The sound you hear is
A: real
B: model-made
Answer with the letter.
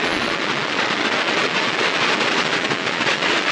B